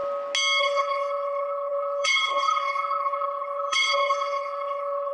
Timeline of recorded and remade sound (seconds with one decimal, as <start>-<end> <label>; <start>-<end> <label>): 0.0-0.6 recorded; 0.6-5.1 remade